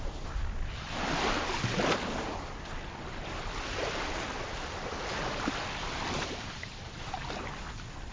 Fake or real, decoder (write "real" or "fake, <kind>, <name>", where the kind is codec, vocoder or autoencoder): real